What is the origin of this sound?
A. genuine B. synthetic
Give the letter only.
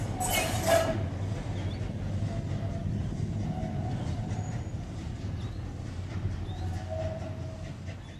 A